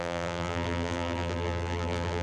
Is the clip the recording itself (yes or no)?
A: no